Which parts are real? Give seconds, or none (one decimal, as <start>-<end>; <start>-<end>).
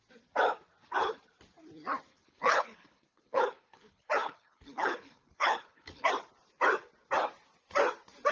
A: 0.0-2.1; 6.1-8.3